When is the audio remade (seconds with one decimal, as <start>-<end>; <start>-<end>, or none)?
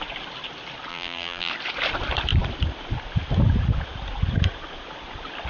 0.9-1.5